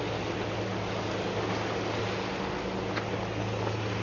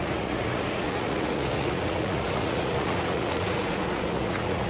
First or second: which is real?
first